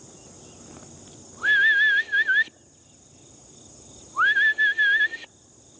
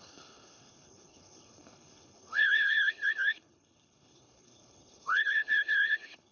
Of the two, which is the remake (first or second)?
second